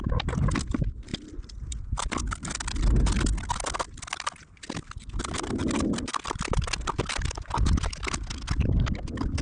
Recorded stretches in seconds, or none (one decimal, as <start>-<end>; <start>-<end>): 0.0-9.4